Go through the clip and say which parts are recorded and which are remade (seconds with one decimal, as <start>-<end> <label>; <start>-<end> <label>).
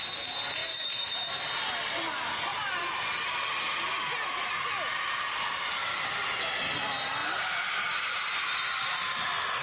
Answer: 0.0-0.6 recorded; 0.6-1.3 remade; 1.3-2.5 recorded; 2.5-3.2 remade; 3.2-9.6 recorded